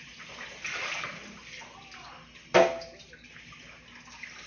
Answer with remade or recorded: remade